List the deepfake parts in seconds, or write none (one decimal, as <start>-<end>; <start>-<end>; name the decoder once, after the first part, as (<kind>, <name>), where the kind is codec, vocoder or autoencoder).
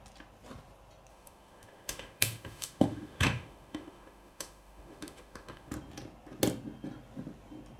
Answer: 1.1-5.7 (autoencoder, DAC-VAE)